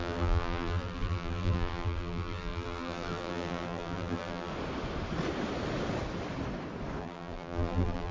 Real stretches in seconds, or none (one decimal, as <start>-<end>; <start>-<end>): 4.5-7.0